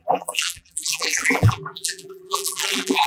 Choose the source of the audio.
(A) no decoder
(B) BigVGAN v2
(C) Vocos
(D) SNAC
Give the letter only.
B